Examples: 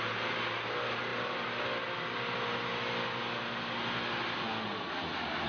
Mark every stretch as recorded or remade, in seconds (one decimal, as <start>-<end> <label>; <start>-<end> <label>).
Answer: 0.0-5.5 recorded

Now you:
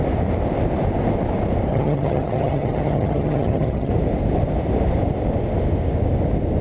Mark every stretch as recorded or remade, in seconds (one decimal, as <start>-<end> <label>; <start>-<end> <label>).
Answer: 0.0-1.7 recorded; 1.7-3.9 remade; 3.9-6.6 recorded

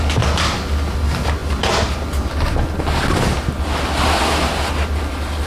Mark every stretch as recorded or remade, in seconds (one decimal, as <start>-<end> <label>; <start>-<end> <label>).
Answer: 0.0-5.5 recorded

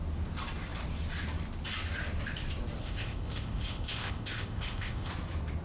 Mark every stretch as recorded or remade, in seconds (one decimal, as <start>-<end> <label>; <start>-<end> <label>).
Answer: 0.0-2.8 recorded; 2.8-5.1 remade; 5.1-5.6 recorded

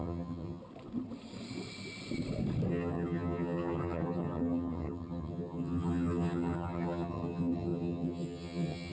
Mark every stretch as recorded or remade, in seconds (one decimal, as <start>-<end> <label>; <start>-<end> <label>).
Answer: 0.0-0.6 remade; 0.6-2.7 recorded; 2.7-8.9 remade

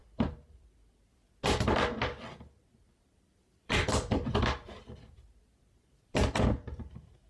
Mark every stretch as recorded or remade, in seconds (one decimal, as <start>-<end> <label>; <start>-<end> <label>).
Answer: 0.0-0.6 remade; 0.6-2.8 recorded; 2.8-6.2 remade; 6.2-7.3 recorded

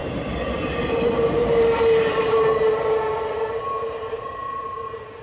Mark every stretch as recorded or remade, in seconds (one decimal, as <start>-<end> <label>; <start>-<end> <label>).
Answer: 0.0-2.4 remade; 2.4-4.1 recorded; 4.1-5.2 remade